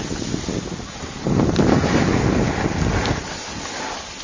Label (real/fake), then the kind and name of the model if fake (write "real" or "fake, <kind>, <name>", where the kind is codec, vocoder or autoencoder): real